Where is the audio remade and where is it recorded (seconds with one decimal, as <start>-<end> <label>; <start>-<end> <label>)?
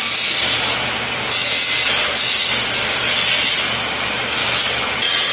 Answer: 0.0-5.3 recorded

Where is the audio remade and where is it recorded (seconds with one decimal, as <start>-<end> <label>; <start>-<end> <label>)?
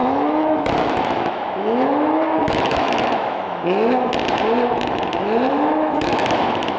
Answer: 0.0-4.1 remade; 4.1-5.5 recorded; 5.5-6.8 remade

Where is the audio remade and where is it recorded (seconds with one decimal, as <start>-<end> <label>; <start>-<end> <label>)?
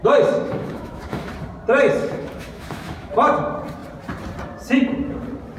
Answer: 0.0-1.3 remade; 1.3-2.0 recorded; 2.0-3.1 remade; 3.1-5.6 recorded